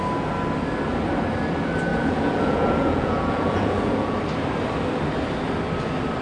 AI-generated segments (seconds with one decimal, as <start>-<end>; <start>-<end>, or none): 1.9-4.2